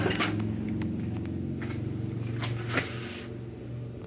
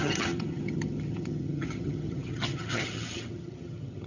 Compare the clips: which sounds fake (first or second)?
second